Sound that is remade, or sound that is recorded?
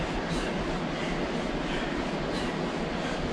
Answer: recorded